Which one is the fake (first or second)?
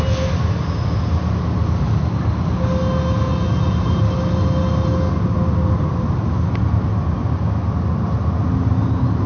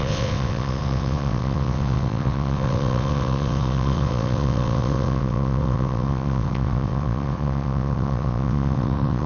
second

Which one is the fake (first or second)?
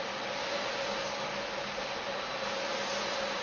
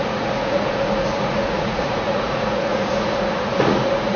second